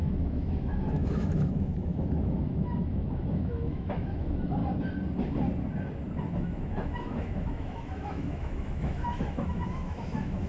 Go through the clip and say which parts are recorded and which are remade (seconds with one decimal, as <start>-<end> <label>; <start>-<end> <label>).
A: 0.0-4.6 remade; 4.6-6.4 recorded; 6.4-10.5 remade